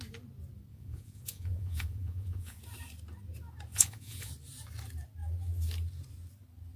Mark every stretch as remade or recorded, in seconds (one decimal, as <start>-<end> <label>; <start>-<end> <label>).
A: 0.0-0.7 recorded; 0.7-2.6 remade; 2.6-3.7 recorded; 3.7-4.3 remade; 4.3-6.8 recorded